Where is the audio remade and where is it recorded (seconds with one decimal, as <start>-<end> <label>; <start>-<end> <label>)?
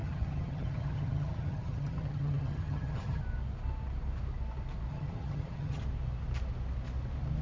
0.0-3.2 remade; 3.2-4.9 recorded; 4.9-5.8 remade; 5.8-7.4 recorded